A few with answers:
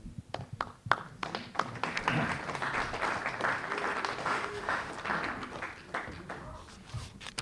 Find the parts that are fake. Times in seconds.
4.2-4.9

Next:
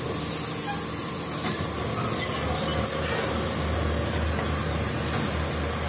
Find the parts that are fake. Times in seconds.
1.0-1.8

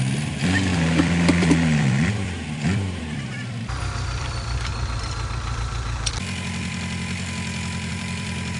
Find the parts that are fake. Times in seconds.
0.0-4.7; 7.9-8.6

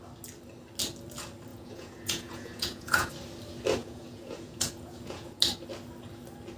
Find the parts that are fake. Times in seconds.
1.5-3.1; 3.8-5.4

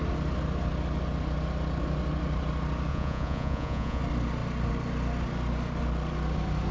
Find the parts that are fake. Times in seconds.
2.9-4.0